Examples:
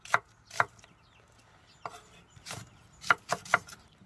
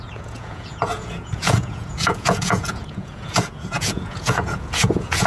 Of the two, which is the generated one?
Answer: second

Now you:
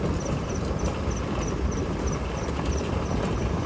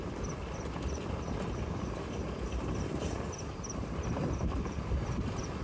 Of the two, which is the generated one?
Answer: second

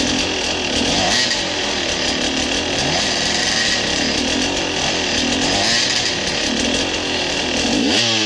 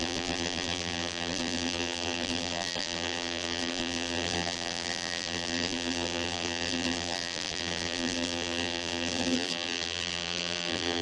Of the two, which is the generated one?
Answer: second